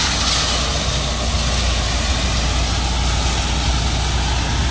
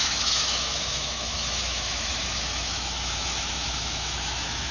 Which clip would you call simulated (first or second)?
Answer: second